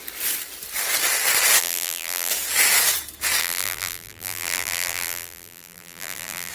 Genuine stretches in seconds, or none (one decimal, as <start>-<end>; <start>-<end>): 0.0-1.6; 2.3-3.4